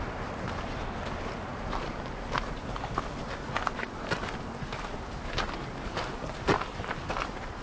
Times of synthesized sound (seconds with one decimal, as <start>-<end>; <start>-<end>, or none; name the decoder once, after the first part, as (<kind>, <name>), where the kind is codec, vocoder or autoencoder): none